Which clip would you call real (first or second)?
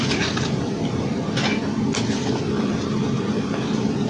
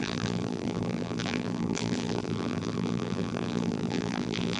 first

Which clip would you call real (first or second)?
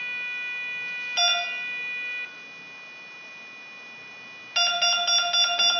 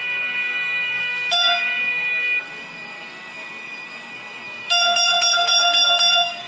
first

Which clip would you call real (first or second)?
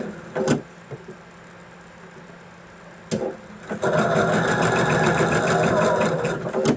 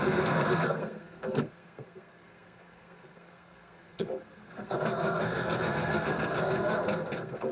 first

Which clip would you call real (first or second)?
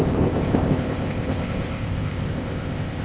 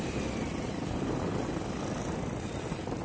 second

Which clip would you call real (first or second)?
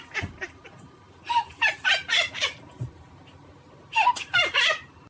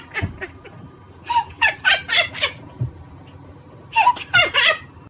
second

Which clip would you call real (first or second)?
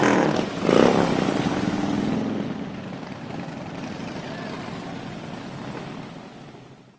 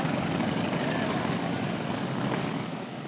first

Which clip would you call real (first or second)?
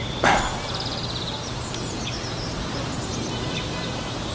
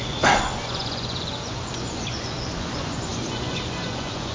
first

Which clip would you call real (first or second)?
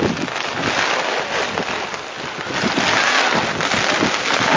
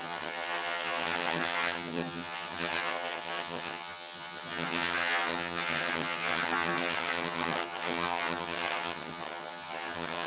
first